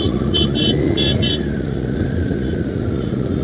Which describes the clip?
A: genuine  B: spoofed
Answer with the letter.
B